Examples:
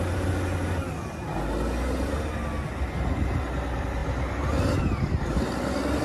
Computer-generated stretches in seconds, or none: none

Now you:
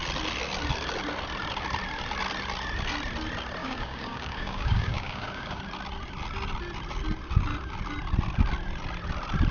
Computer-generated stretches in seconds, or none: 3.6-5.6 (codec, DAC)

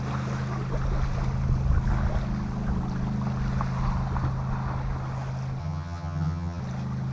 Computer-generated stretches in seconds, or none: 5.6-6.6 (vocoder, HiFi-GAN)

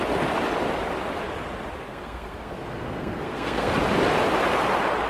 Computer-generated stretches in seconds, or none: 1.9-3.7 (codec, SNAC)

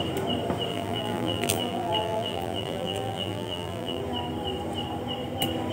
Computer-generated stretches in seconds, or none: 0.7-4.0 (vocoder, BigVGAN v2)

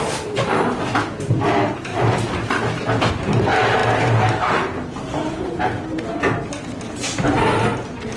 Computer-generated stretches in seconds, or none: 0.0-1.9 (vocoder, BigVGAN v2); 3.1-3.8; 6.5-8.2